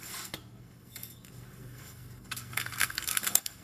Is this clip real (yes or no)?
no